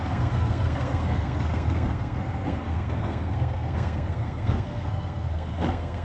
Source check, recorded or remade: remade